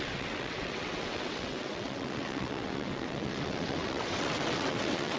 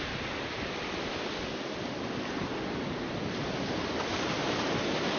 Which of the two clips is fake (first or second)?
first